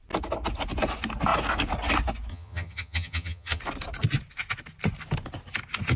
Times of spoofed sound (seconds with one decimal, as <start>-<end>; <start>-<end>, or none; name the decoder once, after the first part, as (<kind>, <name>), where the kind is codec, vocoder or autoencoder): 2.3-3.6 (vocoder, HiFi-GAN)